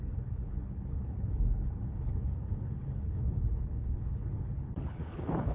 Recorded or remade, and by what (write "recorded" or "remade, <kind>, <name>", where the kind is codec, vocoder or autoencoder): remade, codec, HILCodec